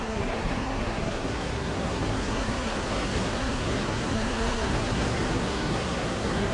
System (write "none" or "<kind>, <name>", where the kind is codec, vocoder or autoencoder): codec, SNAC